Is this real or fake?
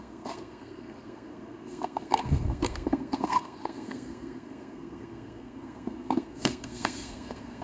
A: fake